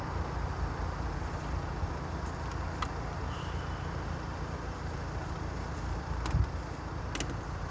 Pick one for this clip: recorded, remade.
recorded